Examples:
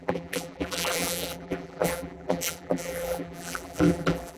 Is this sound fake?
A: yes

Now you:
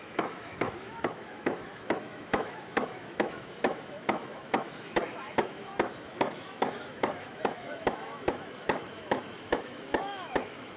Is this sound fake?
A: yes